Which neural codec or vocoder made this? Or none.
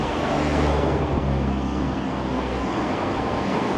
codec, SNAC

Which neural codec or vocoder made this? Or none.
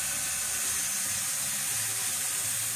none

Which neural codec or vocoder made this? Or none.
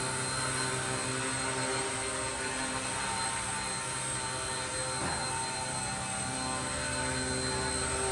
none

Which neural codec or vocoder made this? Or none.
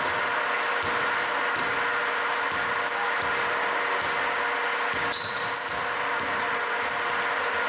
none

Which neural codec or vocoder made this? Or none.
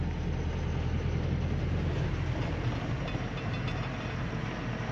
none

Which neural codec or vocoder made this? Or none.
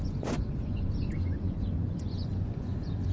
vocoder, Vocos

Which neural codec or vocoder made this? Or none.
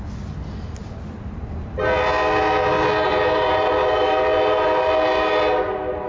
none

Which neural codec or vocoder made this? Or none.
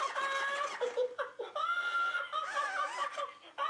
none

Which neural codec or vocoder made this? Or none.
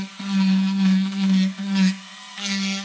codec, SNAC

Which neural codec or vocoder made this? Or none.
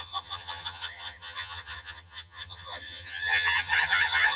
vocoder, HiFi-GAN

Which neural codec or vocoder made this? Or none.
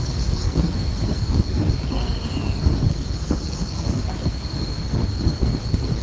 codec, SNAC